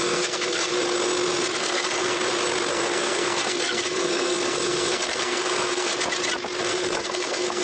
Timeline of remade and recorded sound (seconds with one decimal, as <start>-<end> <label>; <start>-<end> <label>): 0.0-0.7 remade; 0.7-1.6 recorded; 1.6-2.2 remade; 2.2-2.7 recorded; 2.7-5.9 remade; 5.9-6.6 recorded; 6.6-7.6 remade